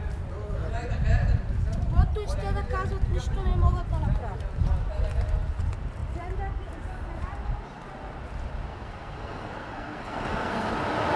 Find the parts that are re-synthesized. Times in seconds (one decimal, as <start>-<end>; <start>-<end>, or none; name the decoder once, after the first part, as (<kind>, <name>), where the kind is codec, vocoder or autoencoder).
8.7-10.7 (codec, SNAC)